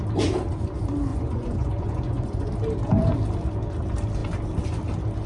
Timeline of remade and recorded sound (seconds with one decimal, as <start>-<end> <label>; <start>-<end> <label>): 0.0-1.1 recorded; 1.1-2.5 remade; 2.5-5.3 recorded